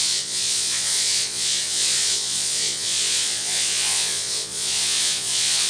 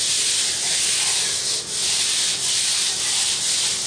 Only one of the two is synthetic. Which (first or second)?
first